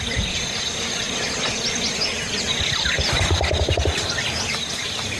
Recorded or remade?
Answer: recorded